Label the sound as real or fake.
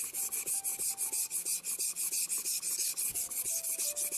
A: real